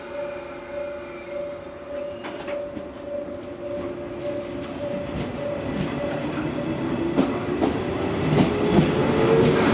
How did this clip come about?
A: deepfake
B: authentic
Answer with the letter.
B